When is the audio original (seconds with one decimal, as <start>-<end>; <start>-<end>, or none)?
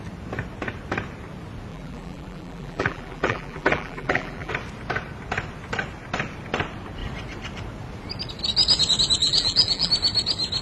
0.0-1.7; 4.5-9.2; 9.9-10.6